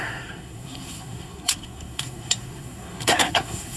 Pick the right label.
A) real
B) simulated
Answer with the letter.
B